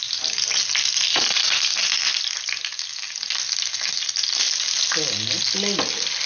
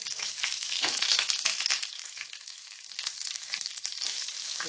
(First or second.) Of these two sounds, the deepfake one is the second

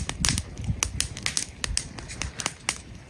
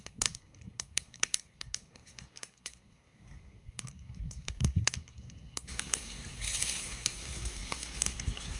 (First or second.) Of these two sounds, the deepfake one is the second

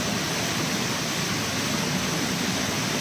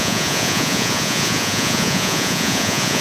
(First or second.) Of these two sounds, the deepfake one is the second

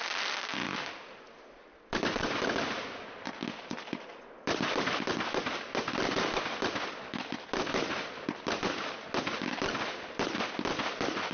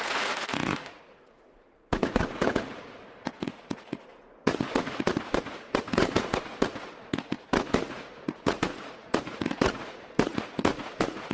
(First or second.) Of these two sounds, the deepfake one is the second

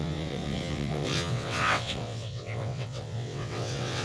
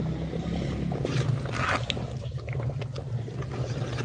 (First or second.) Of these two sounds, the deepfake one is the first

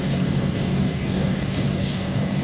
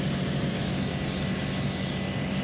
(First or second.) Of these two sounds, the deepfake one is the first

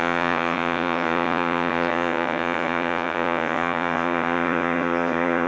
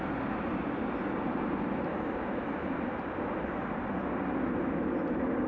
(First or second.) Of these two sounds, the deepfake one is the first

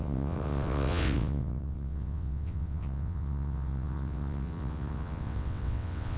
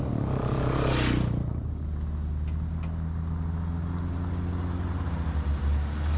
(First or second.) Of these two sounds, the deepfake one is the first